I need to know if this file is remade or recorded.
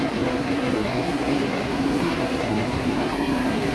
remade